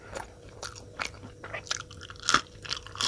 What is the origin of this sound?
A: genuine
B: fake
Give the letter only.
A